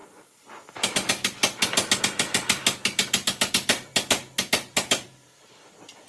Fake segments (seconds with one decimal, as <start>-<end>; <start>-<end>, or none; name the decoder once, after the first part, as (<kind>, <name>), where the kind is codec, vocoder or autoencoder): 2.0-2.6 (vocoder, BigVGAN v2); 3.5-3.9; 4.5-6.1